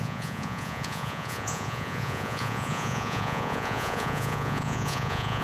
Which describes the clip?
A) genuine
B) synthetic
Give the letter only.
B